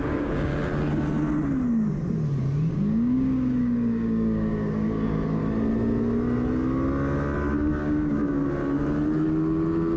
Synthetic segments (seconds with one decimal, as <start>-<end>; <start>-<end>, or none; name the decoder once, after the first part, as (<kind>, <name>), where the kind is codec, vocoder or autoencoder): 0.0-0.5 (codec, DAC); 2.7-5.4; 7.5-8.4